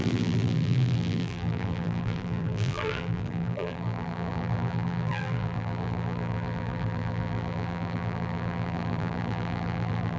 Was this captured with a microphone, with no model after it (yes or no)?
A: no